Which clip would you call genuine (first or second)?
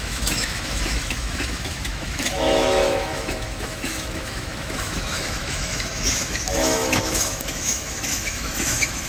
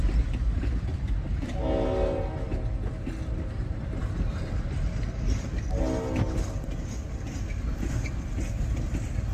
second